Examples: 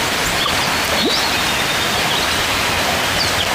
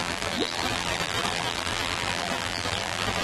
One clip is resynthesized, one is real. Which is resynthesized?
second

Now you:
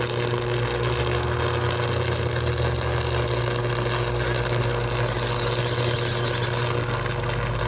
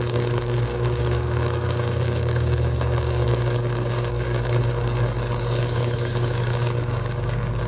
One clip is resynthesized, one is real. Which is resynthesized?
second